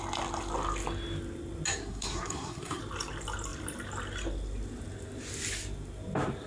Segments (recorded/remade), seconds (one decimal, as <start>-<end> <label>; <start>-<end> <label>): 0.0-1.7 recorded; 1.7-2.8 remade; 2.8-6.5 recorded